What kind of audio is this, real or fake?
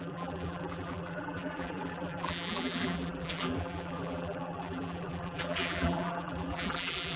fake